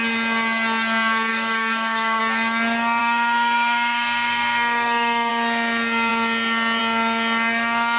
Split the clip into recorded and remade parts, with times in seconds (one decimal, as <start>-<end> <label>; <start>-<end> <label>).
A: 0.0-1.3 recorded; 1.3-2.2 remade; 2.2-3.0 recorded; 3.0-5.3 remade; 5.3-8.0 recorded